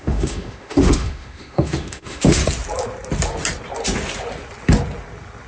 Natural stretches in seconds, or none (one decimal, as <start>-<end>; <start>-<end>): 2.4-5.5